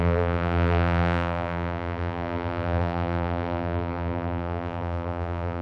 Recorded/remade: remade